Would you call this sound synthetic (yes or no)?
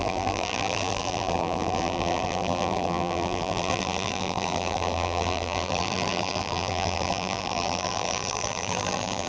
yes